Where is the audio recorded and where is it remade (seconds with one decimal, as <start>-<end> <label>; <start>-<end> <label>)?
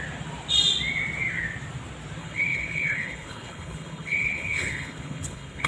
0.0-2.2 recorded; 2.2-5.7 remade